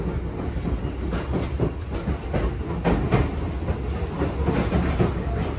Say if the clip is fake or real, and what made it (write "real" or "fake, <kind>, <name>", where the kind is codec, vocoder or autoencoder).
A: real